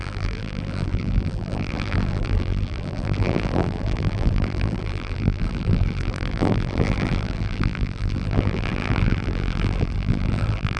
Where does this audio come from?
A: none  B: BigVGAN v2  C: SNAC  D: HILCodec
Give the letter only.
B